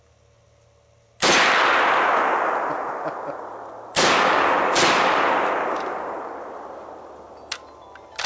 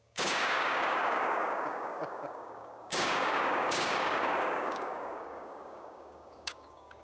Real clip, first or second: first